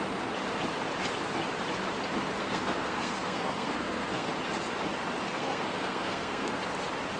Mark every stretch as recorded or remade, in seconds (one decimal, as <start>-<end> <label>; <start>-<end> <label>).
0.0-2.4 recorded; 2.4-4.3 remade; 4.3-5.3 recorded; 5.3-6.6 remade; 6.6-7.2 recorded